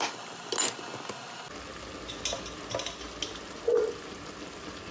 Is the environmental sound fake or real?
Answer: real